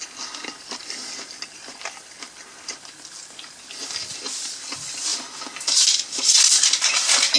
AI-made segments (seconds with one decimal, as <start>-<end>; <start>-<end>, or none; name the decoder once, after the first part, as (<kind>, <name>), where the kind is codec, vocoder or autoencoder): none